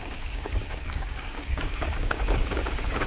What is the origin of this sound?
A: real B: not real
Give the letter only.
B